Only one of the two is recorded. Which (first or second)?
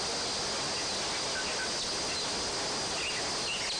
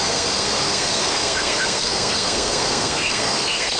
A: first